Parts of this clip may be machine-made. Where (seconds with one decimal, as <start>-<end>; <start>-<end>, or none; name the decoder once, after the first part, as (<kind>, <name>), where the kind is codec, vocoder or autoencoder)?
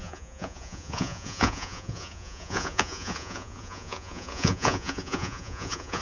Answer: 0.0-6.0 (vocoder, Vocos)